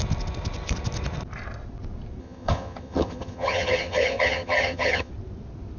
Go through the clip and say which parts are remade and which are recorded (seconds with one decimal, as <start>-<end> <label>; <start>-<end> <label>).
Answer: 0.0-2.2 recorded; 2.2-5.1 remade; 5.1-5.8 recorded